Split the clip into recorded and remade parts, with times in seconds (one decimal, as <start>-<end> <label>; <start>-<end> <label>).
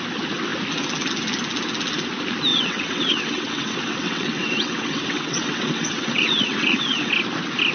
0.0-2.5 recorded; 2.5-7.1 remade; 7.1-7.7 recorded